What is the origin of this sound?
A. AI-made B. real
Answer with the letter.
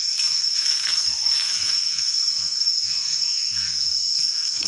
A